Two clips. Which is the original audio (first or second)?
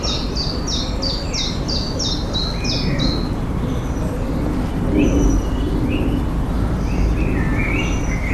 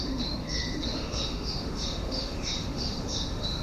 first